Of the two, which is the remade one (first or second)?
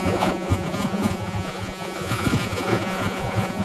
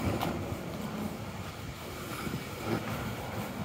first